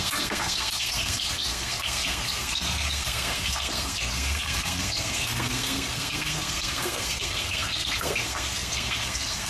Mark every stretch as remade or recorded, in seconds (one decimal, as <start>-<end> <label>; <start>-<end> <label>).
0.0-9.5 remade